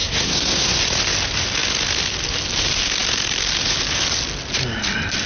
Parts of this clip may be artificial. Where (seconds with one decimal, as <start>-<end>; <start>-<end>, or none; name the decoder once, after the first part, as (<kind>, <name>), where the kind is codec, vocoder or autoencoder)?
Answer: 0.0-0.8 (codec, SNAC)